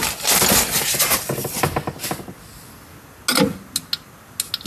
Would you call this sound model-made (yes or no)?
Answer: no